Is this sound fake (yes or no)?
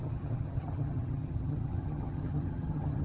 yes